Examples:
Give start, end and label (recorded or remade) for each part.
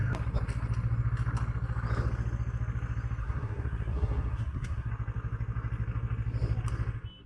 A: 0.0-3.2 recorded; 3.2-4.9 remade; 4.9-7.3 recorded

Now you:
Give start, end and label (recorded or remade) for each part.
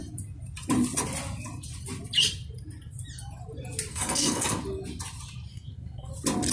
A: 0.0-3.9 recorded; 3.9-4.6 remade; 4.6-5.5 recorded; 5.5-6.1 remade; 6.1-6.5 recorded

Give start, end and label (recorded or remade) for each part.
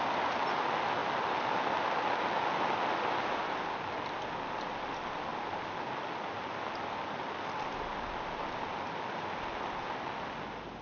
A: 0.0-10.8 recorded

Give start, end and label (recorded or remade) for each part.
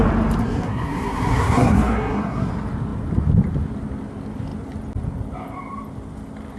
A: 0.0-0.4 recorded; 0.4-2.5 remade; 2.5-6.6 recorded